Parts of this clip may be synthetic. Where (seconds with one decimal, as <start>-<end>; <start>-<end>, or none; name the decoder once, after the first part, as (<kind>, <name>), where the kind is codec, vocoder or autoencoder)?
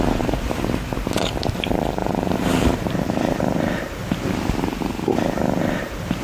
0.0-4.0 (vocoder, BigVGAN v2); 5.8-6.2